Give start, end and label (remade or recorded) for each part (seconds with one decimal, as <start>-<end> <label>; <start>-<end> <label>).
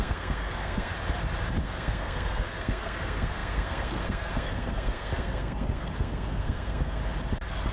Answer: 0.0-0.9 remade; 0.9-1.6 recorded; 1.6-7.0 remade; 7.0-7.7 recorded